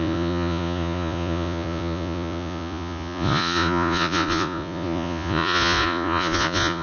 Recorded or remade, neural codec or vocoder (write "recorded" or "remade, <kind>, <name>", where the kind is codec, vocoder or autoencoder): remade, vocoder, Vocos